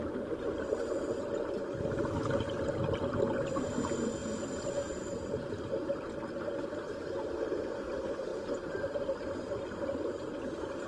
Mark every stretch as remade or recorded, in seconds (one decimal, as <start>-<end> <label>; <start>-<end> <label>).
0.0-4.2 recorded; 4.2-5.4 remade; 5.4-8.3 recorded; 8.3-9.6 remade; 9.6-10.9 recorded